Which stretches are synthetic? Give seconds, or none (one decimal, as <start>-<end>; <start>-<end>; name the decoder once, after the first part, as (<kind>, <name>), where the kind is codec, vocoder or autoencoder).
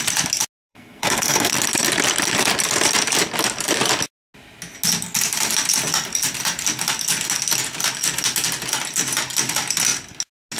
0.7-1.5 (codec, SNAC)